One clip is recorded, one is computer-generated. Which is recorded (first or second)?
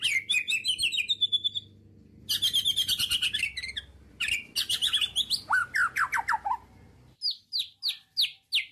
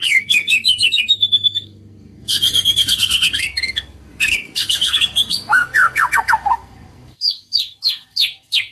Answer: first